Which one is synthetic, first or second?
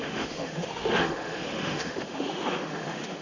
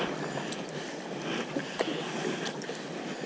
first